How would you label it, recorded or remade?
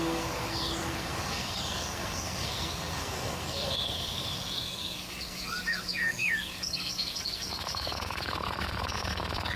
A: remade